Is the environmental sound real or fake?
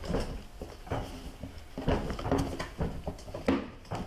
real